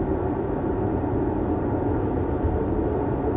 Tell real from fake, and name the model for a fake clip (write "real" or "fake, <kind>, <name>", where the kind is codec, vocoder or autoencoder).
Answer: real